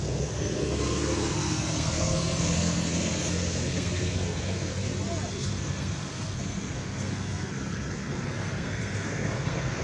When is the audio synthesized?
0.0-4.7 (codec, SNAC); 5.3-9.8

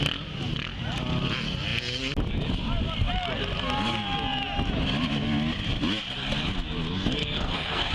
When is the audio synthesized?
7.2-7.9 (codec, SNAC)

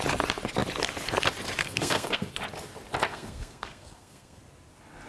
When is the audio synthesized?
1.6-2.3 (codec, SNAC); 3.1-4.4

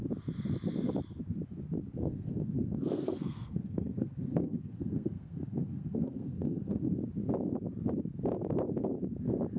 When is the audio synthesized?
2.0-6.8 (codec, SNAC)

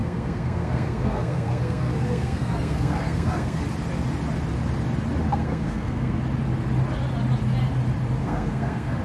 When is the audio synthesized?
0.0-3.6 (codec, SNAC); 5.3-6.2; 8.2-9.0

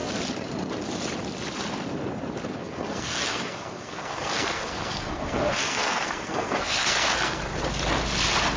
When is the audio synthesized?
2.6-7.4 (codec, SNAC)